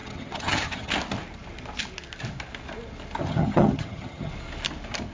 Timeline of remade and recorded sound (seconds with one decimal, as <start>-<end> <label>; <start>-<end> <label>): 0.0-0.9 remade; 0.9-3.2 recorded; 3.2-4.3 remade; 4.3-5.1 recorded